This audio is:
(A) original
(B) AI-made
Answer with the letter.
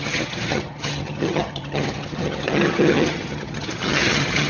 B